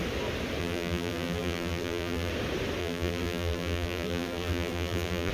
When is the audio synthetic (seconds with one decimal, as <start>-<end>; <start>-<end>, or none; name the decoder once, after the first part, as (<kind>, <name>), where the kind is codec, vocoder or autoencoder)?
0.6-2.3 (vocoder, BigVGAN v2); 2.8-5.3